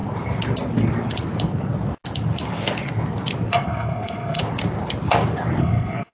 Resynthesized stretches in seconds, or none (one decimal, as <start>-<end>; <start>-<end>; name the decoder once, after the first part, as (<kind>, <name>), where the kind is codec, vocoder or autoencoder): 3.5-4.4 (codec, SNAC); 5.6-6.1